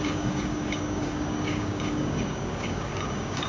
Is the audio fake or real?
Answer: fake